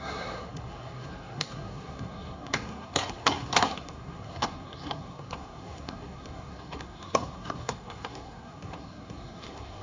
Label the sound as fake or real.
fake